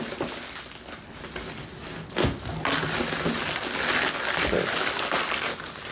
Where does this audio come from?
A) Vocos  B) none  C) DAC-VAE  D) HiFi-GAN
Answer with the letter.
B